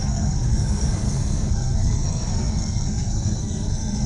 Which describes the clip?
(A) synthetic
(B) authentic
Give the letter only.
A